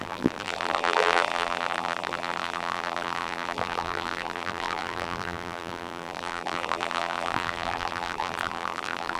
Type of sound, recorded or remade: remade